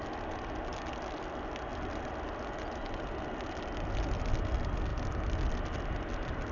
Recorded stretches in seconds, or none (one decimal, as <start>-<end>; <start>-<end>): 0.0-6.5